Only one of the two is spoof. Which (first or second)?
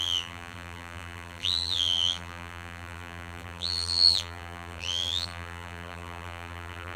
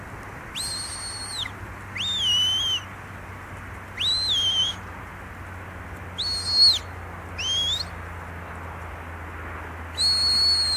first